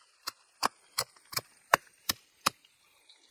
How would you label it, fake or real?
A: fake